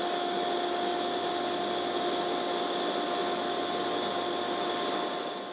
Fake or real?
real